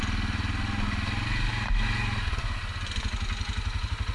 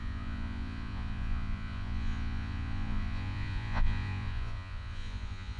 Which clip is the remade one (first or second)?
second